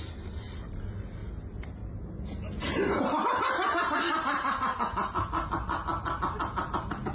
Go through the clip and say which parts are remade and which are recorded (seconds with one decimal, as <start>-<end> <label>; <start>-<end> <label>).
0.0-7.1 recorded